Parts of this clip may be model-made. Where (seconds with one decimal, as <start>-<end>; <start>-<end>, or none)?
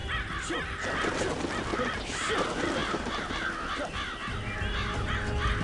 2.8-3.5